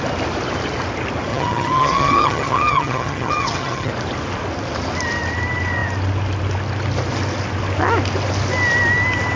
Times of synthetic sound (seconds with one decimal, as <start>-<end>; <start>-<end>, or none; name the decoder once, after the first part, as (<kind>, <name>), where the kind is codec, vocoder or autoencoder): 1.3-3.9 (vocoder, HiFi-GAN)